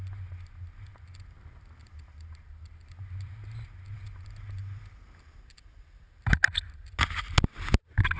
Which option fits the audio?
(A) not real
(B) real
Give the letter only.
B